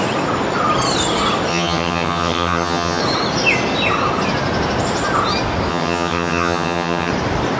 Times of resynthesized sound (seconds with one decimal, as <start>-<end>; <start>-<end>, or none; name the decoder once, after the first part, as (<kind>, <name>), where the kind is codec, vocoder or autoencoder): 1.5-3.0 (vocoder, HiFi-GAN); 5.7-7.1